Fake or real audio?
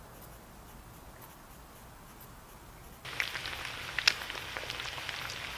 real